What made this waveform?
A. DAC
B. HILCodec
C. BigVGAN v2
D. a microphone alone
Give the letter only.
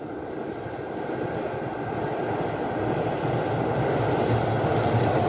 D